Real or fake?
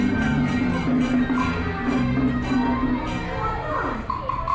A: real